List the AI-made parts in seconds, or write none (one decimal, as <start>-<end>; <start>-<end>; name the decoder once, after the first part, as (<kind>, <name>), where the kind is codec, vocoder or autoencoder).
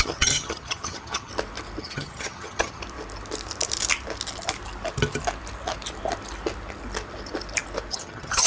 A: 0.0-1.3 (vocoder, HiFi-GAN); 1.8-2.8; 7.9-8.5